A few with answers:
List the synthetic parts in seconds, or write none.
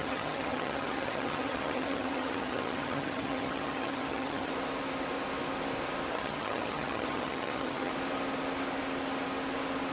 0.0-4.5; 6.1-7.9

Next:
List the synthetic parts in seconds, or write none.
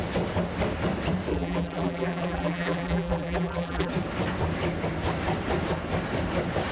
1.3-3.9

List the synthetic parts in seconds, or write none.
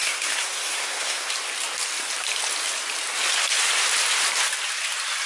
0.0-1.3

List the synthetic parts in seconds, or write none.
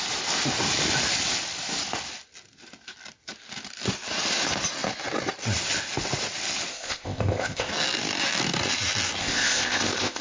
6.7-7.7; 9.2-10.2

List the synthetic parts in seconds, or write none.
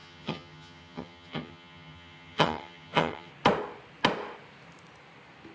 0.0-3.3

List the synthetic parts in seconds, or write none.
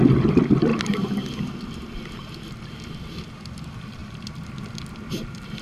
0.0-0.7; 2.9-5.6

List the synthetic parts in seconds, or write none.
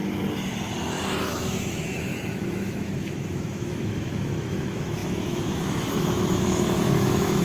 1.2-7.4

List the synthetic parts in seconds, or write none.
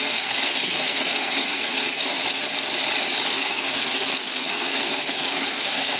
0.0-2.2; 3.3-6.0